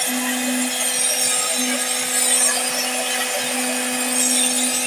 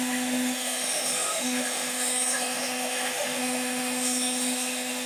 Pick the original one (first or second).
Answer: first